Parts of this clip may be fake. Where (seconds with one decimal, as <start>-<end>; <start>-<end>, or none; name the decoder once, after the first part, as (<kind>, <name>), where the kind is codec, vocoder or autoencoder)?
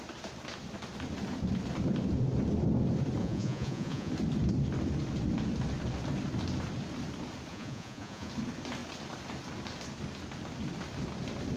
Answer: 3.2-4.1 (vocoder, Vocos); 7.5-8.3